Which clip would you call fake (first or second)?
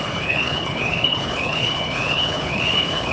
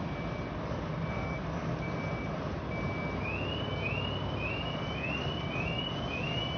first